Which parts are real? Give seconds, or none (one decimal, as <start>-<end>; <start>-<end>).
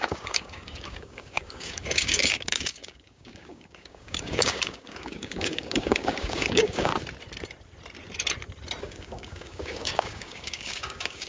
6.9-8.8